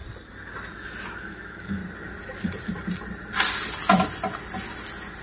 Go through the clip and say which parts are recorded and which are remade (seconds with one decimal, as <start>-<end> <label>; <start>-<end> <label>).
0.0-1.2 recorded; 1.2-1.8 remade; 1.8-5.2 recorded